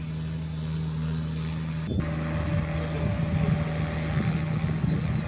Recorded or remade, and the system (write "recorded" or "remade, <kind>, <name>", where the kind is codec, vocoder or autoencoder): recorded